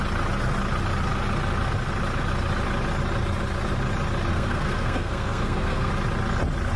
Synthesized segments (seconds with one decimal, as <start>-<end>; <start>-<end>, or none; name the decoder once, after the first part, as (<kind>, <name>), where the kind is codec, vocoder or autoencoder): 4.3-5.9 (codec, SNAC)